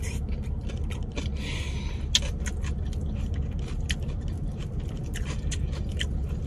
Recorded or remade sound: recorded